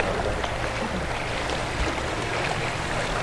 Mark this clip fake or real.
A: real